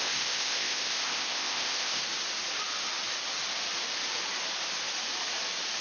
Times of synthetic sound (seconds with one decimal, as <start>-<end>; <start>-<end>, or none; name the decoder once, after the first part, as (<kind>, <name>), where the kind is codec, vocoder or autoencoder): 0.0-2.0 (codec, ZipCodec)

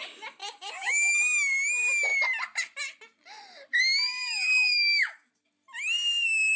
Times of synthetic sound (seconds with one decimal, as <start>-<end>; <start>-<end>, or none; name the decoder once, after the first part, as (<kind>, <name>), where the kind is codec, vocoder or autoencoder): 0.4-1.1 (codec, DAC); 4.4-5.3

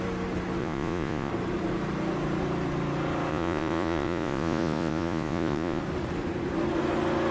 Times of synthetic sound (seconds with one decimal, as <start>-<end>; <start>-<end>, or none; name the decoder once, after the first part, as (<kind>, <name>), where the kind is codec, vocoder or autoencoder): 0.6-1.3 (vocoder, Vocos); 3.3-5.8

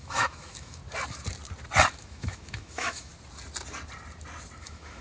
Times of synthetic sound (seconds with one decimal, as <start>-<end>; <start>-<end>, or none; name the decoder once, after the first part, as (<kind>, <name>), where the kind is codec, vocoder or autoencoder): 0.0-0.8 (autoencoder, DAC-VAE); 2.0-3.1; 4.6-5.0

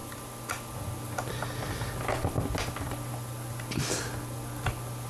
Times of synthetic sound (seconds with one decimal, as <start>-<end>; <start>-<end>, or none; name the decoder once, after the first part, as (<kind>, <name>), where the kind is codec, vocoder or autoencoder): none

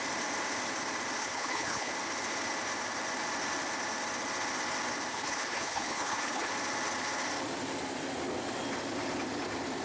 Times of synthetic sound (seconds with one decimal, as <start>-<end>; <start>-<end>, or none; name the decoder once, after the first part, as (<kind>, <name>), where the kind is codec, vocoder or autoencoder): 1.2-1.9 (codec, HILCodec); 5.1-6.5

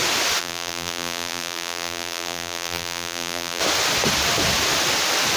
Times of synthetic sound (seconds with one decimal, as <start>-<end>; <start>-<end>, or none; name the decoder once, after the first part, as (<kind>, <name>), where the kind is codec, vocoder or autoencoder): 0.4-3.6 (vocoder, BigVGAN v2)